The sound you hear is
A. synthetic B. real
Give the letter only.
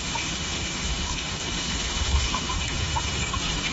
A